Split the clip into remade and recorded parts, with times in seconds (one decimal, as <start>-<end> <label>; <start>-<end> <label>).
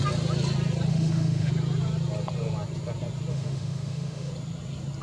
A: 0.0-0.9 recorded; 0.9-1.5 remade; 1.5-3.3 recorded; 3.3-4.3 remade; 4.3-5.0 recorded